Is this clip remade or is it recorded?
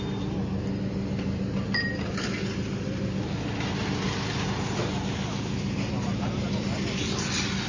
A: recorded